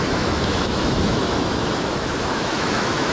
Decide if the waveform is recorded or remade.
remade